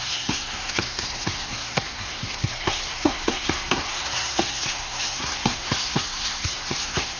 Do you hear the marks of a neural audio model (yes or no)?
yes